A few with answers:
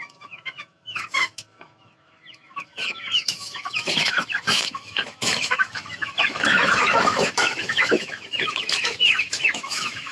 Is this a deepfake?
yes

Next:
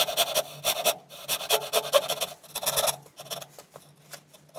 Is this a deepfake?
no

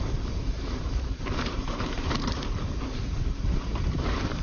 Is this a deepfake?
yes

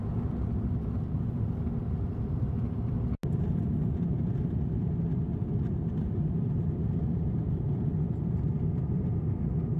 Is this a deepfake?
no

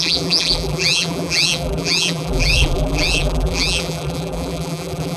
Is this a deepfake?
yes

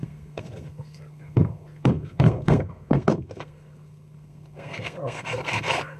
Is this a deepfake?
yes